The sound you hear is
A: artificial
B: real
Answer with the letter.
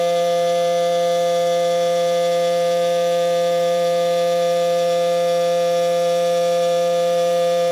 A